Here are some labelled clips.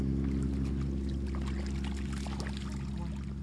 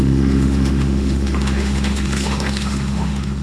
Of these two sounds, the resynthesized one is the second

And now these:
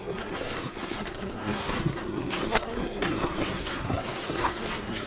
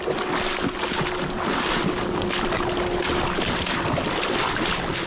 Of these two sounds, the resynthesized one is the first